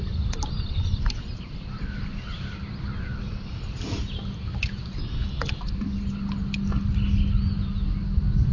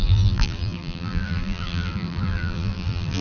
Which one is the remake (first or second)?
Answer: second